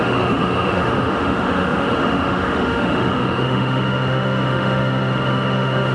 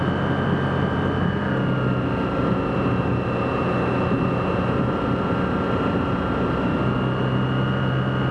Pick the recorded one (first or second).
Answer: second